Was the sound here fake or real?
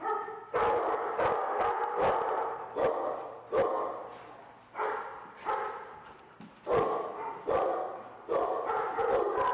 real